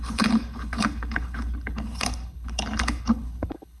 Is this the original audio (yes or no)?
no